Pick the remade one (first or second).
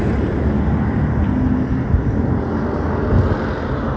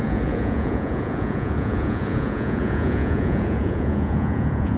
second